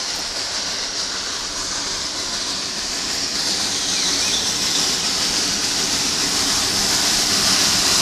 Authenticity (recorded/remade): remade